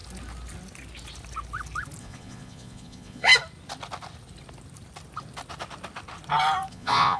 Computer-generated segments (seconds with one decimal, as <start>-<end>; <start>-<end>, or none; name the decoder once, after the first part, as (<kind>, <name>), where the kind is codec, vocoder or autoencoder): 2.0-3.3 (vocoder, Vocos); 6.7-7.2